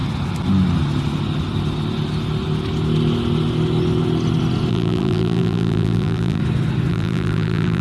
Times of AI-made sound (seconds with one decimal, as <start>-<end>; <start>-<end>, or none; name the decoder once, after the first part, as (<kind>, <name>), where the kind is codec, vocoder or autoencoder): 4.7-6.4 (vocoder, BigVGAN v2); 6.9-7.8